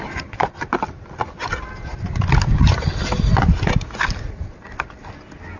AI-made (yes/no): no